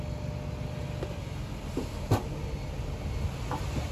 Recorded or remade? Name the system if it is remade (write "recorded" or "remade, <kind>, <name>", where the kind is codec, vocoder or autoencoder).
recorded